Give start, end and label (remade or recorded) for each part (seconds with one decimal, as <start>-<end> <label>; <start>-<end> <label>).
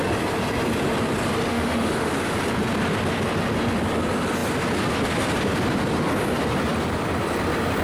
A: 0.0-1.5 recorded; 1.5-2.1 remade; 2.1-7.8 recorded